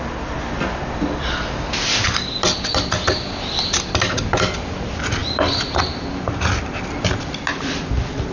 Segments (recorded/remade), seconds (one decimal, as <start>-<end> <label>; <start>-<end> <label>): 0.0-8.3 recorded